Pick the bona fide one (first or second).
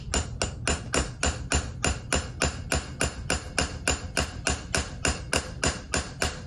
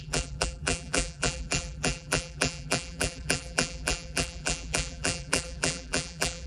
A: first